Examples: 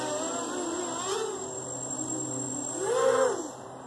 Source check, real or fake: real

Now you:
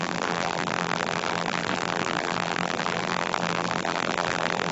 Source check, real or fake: fake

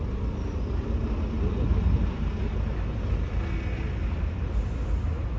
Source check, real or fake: real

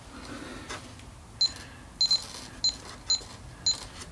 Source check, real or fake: real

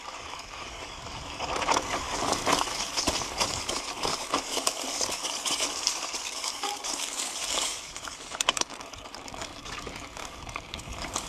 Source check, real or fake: fake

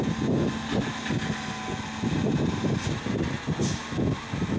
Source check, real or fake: real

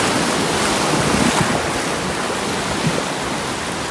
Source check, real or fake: real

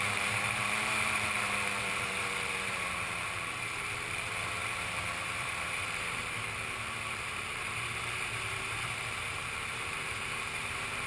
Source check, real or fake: fake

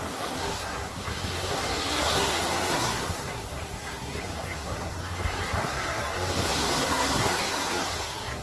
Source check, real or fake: fake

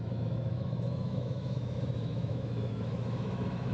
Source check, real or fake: fake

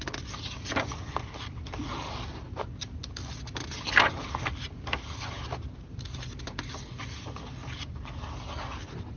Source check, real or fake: real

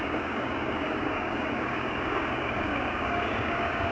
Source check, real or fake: fake